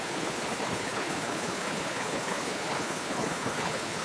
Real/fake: fake